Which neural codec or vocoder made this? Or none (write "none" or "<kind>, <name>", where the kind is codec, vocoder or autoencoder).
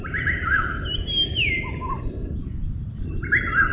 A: vocoder, BigVGAN v2